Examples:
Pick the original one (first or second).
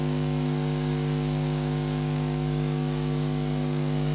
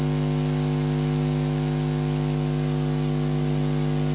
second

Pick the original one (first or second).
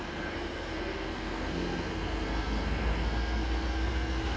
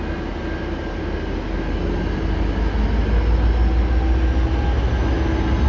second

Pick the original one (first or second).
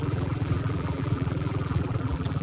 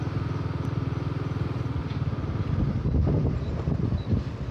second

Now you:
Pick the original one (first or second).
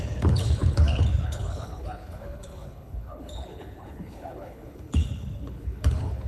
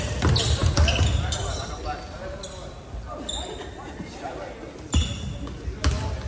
second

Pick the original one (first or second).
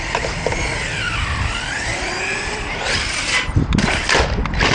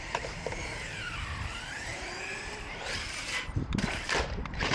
first